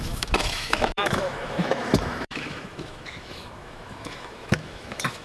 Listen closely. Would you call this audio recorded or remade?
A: remade